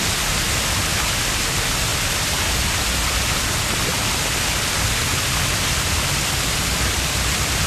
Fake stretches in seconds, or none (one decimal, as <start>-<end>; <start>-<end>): none